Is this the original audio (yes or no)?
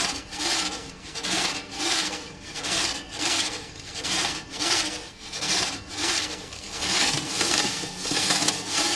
no